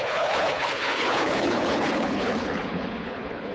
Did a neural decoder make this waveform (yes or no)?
yes